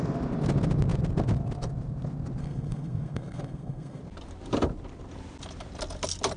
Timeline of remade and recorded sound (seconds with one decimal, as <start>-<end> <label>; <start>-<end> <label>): 0.0-2.4 recorded; 2.4-4.0 remade; 4.0-6.4 recorded